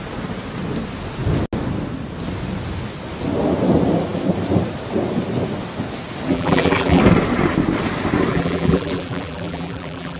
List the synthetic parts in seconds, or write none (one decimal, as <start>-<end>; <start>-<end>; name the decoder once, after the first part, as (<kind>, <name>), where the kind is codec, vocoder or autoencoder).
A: 6.3-7.0 (vocoder, BigVGAN v2); 8.3-10.2